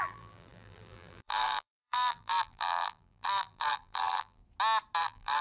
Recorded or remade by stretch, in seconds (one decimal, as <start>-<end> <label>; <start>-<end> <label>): 0.0-4.4 remade; 4.4-5.0 recorded; 5.0-5.4 remade